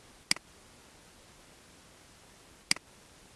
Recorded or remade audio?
recorded